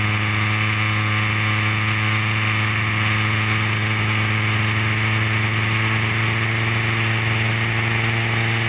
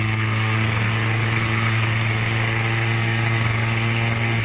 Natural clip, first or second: first